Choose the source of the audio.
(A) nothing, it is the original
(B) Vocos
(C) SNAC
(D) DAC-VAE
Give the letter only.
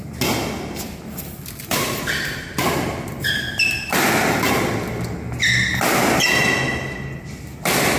A